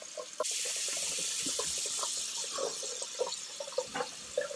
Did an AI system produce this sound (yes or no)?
no